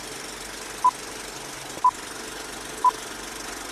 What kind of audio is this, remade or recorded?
recorded